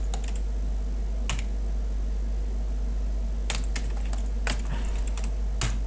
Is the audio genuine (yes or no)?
yes